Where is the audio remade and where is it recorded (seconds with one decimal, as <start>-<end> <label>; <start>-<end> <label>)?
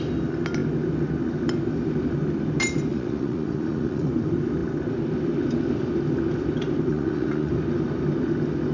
0.0-2.9 recorded; 2.9-4.1 remade; 4.1-6.9 recorded; 6.9-7.5 remade; 7.5-8.7 recorded